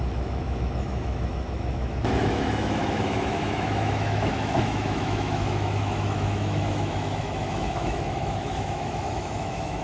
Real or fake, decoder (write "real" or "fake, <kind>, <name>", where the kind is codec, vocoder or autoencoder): fake, autoencoder, DAC-VAE